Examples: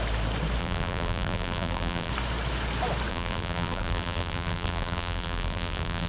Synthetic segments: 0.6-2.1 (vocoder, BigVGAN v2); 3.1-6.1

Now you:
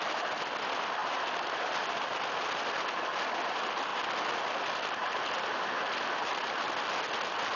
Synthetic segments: none